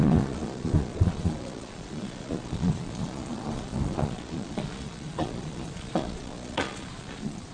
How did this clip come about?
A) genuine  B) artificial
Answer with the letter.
B